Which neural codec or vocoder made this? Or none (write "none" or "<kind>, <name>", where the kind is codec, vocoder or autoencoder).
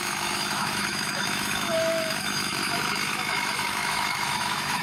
autoencoder, DAC-VAE